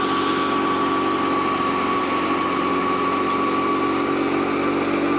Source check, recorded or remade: recorded